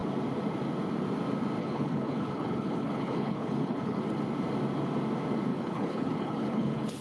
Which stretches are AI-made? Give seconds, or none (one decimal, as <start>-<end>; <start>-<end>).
1.6-4.0; 5.5-7.0